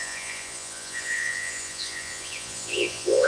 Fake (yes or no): yes